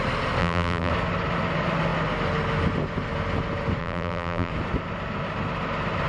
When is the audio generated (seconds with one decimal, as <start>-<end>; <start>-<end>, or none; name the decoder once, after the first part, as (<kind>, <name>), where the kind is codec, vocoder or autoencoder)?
0.4-0.9 (vocoder, BigVGAN v2); 3.8-4.5